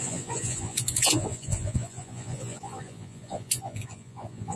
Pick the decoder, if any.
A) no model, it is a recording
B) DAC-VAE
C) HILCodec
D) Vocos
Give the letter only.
D